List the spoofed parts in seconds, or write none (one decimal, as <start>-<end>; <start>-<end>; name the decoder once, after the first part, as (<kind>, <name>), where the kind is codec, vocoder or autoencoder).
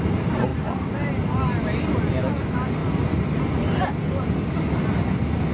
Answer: none